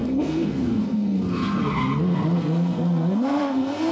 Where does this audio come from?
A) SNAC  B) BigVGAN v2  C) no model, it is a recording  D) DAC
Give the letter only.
A